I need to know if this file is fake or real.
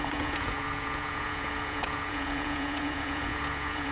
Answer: fake